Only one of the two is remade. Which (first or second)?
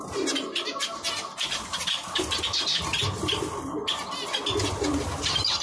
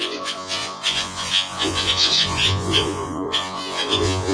second